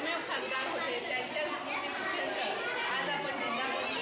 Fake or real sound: real